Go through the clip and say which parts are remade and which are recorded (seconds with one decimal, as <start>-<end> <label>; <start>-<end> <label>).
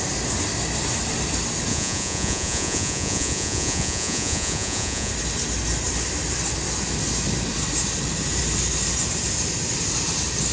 0.0-1.7 recorded; 1.7-5.1 remade; 5.1-10.5 recorded